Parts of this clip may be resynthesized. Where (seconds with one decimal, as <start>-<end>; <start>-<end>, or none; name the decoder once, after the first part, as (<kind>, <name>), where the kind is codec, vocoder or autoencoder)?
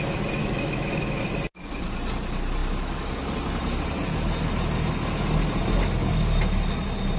0.4-1.2 (autoencoder, DAC-VAE)